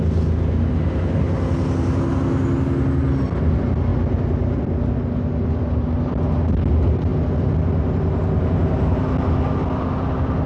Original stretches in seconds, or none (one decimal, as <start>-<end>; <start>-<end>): 0.0-10.5